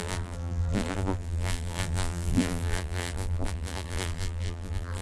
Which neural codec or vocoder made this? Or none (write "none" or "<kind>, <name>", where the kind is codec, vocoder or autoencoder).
vocoder, BigVGAN v2